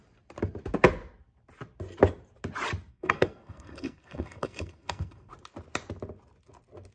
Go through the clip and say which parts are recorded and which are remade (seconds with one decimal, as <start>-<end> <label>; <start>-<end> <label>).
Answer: 0.0-2.9 recorded; 2.9-5.3 remade; 5.3-6.9 recorded